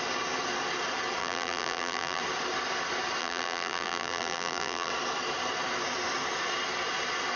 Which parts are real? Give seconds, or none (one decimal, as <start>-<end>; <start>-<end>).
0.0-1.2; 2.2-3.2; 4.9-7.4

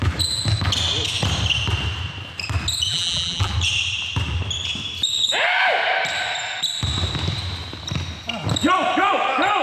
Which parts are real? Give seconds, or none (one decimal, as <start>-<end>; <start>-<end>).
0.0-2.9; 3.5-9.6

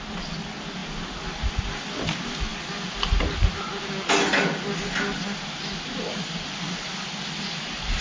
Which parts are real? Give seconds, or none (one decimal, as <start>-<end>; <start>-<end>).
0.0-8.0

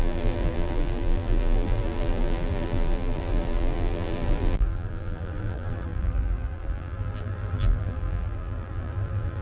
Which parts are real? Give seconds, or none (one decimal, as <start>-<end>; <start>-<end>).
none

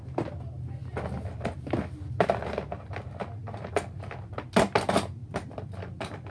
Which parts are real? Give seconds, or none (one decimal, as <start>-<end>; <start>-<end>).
0.0-6.3